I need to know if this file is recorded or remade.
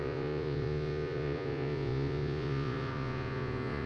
remade